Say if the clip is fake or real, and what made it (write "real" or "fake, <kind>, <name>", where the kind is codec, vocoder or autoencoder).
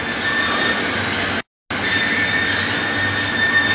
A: real